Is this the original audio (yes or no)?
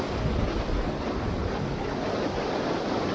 yes